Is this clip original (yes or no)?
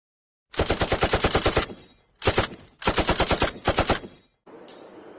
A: yes